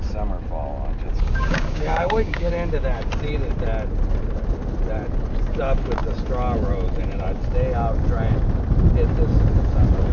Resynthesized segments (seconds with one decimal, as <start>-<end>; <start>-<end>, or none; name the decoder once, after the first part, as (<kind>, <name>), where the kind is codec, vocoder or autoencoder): 1.1-2.5 (codec, DAC)